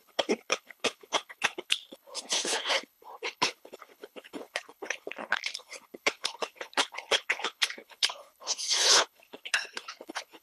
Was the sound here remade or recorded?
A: remade